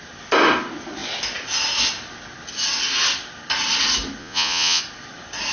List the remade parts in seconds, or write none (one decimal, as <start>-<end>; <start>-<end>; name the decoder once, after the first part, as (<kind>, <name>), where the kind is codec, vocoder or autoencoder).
4.2-4.8 (vocoder, Vocos)

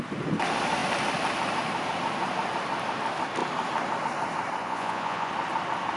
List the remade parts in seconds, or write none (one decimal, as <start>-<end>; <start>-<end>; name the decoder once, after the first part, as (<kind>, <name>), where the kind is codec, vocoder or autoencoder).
4.6-5.3 (vocoder, Vocos)

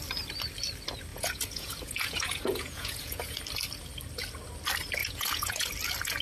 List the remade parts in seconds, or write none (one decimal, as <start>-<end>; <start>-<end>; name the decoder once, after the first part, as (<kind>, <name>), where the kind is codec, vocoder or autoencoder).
1.1-3.4 (vocoder, Vocos); 5.0-5.7

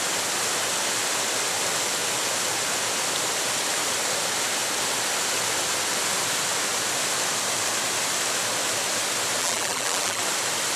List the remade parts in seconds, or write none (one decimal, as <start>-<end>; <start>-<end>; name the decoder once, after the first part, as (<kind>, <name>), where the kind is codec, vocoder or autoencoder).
9.4-10.2 (vocoder, BigVGAN v2)

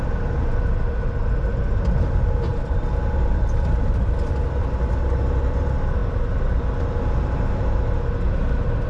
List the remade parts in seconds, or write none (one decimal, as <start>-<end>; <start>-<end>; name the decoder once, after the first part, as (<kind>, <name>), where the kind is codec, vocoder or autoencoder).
none